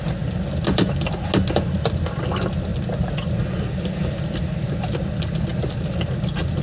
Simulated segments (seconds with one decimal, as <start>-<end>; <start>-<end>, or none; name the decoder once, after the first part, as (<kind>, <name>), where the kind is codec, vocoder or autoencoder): none